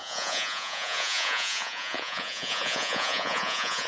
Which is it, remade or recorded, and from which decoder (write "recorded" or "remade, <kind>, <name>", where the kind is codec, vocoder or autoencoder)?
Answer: remade, vocoder, Vocos